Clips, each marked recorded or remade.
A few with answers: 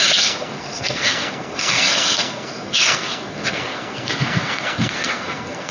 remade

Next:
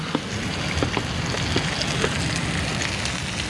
recorded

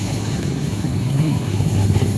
remade